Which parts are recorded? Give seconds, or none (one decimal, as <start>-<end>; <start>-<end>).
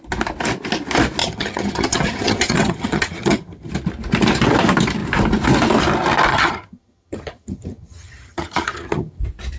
0.0-1.2; 3.7-6.3; 9.2-9.6